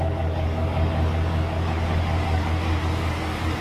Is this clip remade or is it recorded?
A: remade